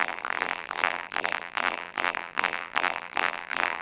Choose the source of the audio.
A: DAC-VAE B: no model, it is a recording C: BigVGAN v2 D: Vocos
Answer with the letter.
C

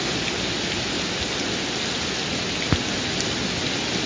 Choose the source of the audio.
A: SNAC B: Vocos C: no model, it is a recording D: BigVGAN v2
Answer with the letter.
C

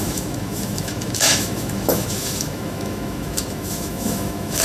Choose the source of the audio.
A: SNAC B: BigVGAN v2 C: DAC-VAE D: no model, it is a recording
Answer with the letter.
C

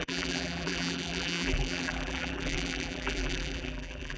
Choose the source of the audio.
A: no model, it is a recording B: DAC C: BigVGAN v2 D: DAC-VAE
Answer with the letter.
C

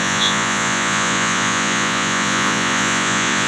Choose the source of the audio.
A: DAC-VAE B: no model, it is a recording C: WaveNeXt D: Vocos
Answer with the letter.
D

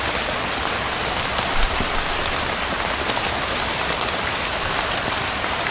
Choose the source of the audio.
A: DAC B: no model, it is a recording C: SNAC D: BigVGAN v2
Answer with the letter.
B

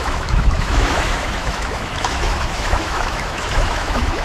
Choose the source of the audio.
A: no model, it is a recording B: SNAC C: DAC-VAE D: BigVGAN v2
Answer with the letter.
C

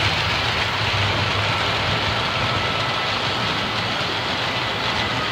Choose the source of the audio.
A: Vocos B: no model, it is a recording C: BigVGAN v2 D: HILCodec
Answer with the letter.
B